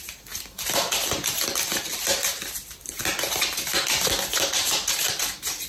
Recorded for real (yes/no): yes